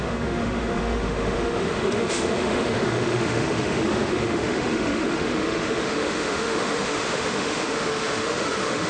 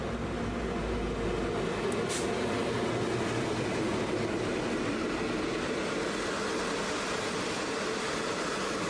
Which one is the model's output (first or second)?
first